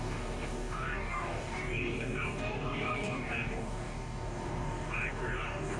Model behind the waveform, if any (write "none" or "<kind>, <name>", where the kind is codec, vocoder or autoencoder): codec, DAC